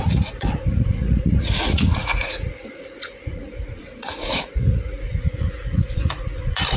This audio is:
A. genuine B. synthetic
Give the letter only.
B